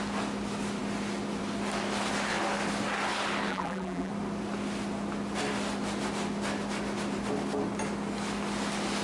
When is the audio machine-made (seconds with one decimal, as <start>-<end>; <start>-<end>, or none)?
3.5-4.1